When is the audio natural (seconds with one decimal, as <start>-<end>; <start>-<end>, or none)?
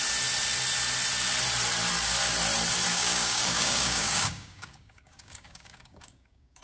0.0-2.9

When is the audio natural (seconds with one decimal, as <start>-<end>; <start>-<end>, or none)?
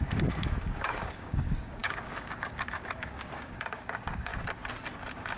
4.3-5.4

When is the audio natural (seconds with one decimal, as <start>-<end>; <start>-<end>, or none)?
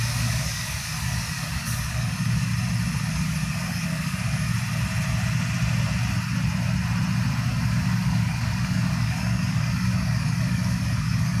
2.5-3.1; 4.5-7.5